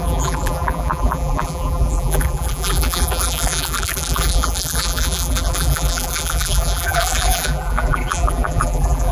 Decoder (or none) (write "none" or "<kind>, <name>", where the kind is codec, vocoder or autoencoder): vocoder, BigVGAN v2